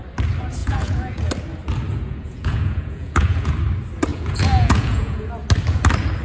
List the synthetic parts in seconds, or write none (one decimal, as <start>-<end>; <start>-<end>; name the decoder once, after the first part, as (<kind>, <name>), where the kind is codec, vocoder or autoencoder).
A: 0.6-1.3 (vocoder, Vocos); 1.9-3.5; 4.1-5.3